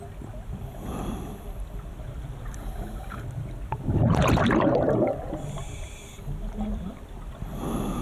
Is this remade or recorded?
remade